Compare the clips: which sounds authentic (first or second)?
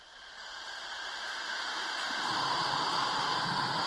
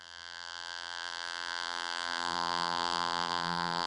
first